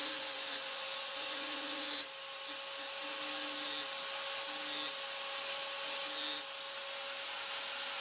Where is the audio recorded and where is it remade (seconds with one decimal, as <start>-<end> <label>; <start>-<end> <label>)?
0.0-1.9 remade; 1.9-8.0 recorded